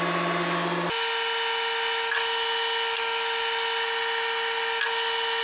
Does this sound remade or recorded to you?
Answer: recorded